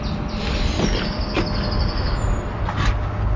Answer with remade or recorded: recorded